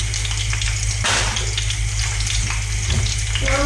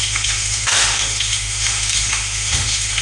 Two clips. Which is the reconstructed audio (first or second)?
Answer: second